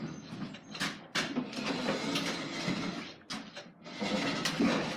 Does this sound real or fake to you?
real